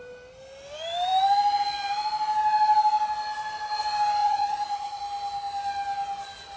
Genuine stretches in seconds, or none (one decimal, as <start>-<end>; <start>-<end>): 0.0-4.2; 5.0-6.6